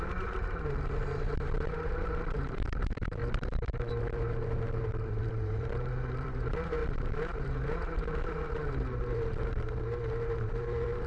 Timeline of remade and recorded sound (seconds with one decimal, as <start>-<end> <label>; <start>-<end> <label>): 0.0-3.2 remade; 3.2-4.0 recorded; 4.0-11.1 remade